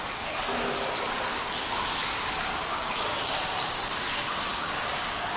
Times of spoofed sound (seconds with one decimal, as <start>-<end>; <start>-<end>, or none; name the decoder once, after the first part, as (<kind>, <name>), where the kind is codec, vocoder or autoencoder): 2.7-3.3 (codec, DAC); 4.5-5.4